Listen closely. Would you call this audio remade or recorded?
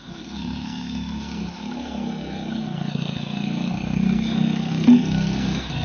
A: remade